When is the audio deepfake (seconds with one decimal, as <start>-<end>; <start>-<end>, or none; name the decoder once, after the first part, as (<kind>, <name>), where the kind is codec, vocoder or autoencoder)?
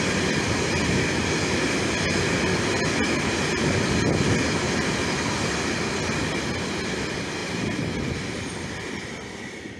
none